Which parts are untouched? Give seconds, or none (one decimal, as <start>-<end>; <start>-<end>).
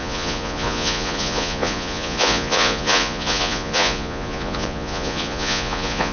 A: none